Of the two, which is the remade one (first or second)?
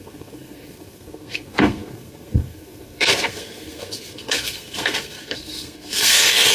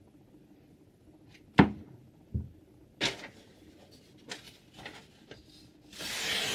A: first